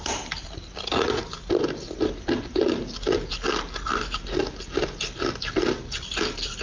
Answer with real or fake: real